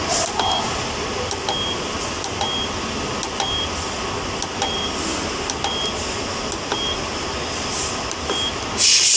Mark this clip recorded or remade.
recorded